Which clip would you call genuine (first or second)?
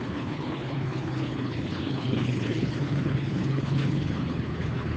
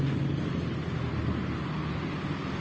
second